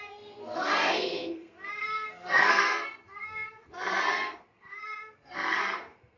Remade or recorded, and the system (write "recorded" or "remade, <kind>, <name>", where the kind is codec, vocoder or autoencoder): remade, codec, SNAC